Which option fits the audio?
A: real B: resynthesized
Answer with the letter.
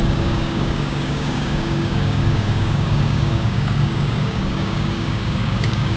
B